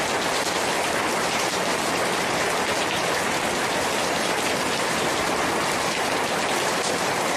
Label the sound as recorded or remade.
recorded